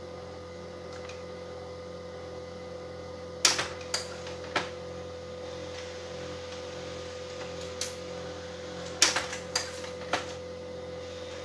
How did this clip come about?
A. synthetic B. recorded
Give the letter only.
B